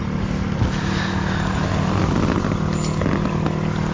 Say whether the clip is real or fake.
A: real